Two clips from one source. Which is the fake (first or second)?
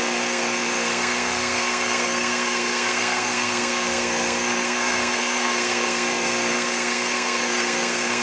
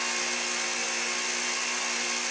first